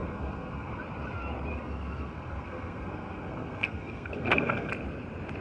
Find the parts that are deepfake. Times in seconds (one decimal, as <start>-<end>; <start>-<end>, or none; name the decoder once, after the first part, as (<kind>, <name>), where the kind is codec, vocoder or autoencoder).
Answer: 0.0-0.8 (codec, SNAC); 1.5-4.7